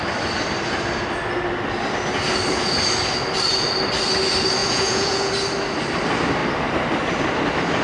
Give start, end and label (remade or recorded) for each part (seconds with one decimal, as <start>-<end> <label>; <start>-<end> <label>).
0.0-4.6 recorded; 4.6-5.3 remade; 5.3-7.8 recorded